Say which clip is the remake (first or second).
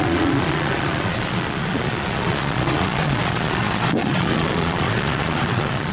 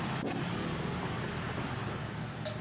first